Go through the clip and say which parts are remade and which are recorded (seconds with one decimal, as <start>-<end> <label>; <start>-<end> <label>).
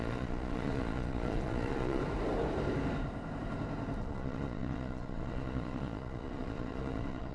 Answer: 0.0-2.0 remade; 2.0-4.0 recorded; 4.0-7.3 remade